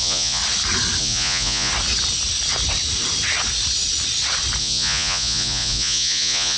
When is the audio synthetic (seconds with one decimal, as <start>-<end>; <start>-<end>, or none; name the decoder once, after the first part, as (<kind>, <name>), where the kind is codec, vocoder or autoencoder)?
0.0-0.4 (vocoder, Vocos); 1.0-1.7; 4.6-6.6